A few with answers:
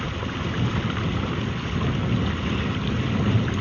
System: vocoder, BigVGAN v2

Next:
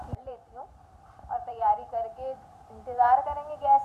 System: vocoder, BigVGAN v2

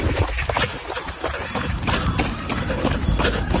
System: none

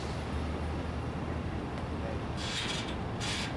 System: none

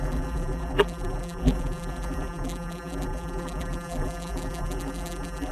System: vocoder, BigVGAN v2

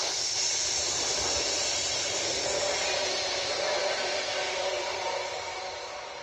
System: none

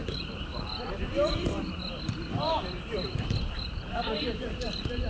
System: vocoder, BigVGAN v2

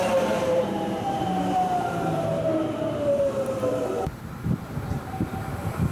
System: vocoder, BigVGAN v2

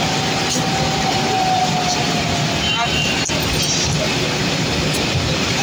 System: none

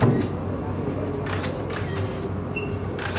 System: none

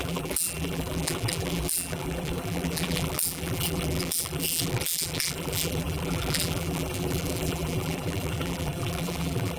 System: vocoder, BigVGAN v2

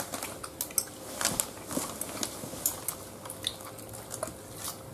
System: none